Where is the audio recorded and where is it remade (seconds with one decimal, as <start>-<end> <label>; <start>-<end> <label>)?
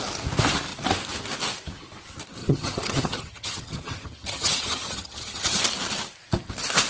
0.0-2.4 recorded; 2.4-5.6 remade; 5.6-6.9 recorded